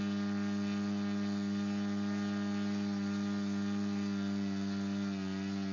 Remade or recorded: recorded